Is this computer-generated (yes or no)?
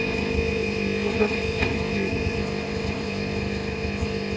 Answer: yes